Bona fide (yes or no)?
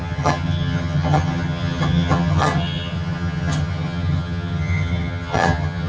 no